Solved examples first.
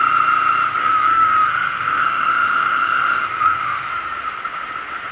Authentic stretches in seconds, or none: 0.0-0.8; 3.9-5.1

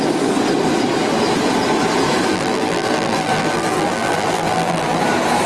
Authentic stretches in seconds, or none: 0.0-2.3; 5.0-5.5

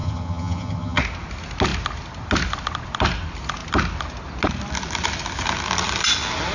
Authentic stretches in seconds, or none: 1.0-6.5

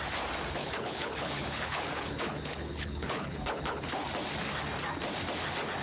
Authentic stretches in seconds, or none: 0.0-0.6; 4.1-5.8

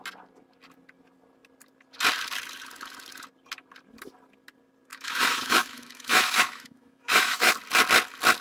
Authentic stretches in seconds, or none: 0.0-4.9; 7.5-8.4

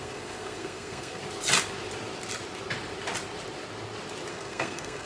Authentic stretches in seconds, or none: 1.2-4.3

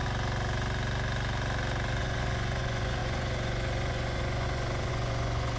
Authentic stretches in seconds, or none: 0.0-2.0

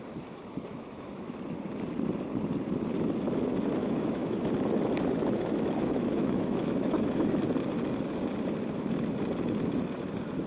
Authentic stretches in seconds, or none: 0.0-0.7; 1.3-3.8; 4.4-5.2; 7.4-10.5